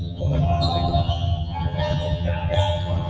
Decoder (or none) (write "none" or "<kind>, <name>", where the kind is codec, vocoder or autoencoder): vocoder, HiFi-GAN